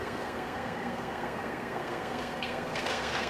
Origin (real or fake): fake